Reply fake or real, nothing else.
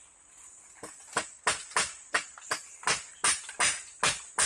real